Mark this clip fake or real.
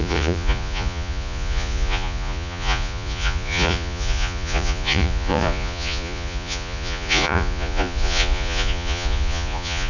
fake